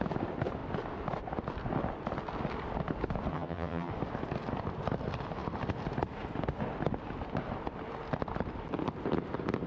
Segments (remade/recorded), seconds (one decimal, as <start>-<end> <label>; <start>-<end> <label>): 0.0-3.3 recorded; 3.3-3.9 remade; 3.9-9.7 recorded

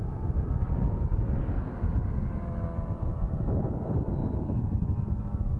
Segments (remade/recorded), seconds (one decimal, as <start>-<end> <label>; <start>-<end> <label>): 0.0-3.1 remade; 3.1-3.7 recorded; 3.7-4.2 remade; 4.2-5.6 recorded

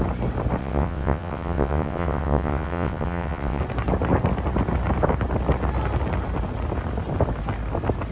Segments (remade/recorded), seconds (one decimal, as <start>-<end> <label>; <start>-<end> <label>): 0.0-0.6 recorded; 0.6-3.6 remade; 3.6-8.1 recorded

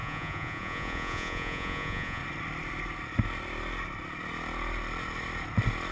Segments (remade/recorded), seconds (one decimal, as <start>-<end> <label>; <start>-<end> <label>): 0.0-2.2 remade; 2.2-5.9 recorded